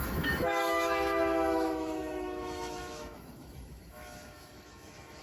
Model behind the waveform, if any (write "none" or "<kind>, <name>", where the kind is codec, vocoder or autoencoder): autoencoder, DAC-VAE